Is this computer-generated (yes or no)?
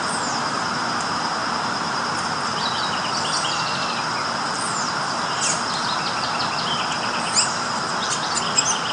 no